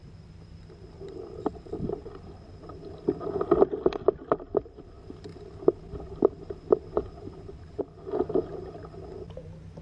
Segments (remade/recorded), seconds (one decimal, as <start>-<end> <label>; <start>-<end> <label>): 0.0-3.2 remade; 3.2-5.3 recorded; 5.3-7.8 remade; 7.8-9.8 recorded